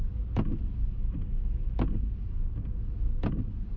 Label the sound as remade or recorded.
recorded